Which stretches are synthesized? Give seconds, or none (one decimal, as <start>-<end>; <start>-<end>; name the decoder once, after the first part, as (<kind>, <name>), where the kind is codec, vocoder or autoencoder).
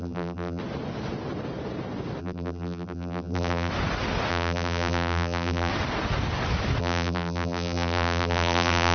0.0-0.6 (vocoder, BigVGAN v2); 2.2-3.7; 4.3-5.7; 6.8-8.9